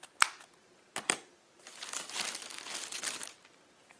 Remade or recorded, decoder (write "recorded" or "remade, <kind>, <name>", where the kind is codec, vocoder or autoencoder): recorded